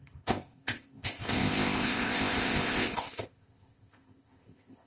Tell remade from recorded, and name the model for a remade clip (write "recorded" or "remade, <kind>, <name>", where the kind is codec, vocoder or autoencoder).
remade, codec, ZipCodec